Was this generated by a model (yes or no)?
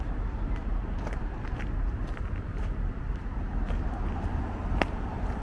no